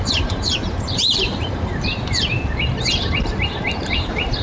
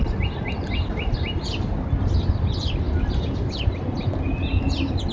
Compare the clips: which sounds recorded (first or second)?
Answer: second